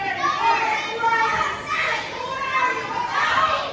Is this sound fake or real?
real